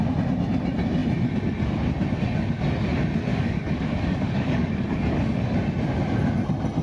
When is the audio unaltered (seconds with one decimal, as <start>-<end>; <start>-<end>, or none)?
0.0-3.3; 5.4-6.8